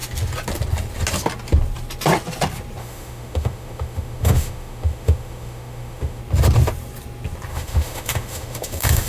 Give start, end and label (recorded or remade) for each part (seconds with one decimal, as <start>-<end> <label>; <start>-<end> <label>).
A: 0.0-2.8 recorded; 2.8-6.2 remade; 6.2-7.5 recorded; 7.5-9.1 remade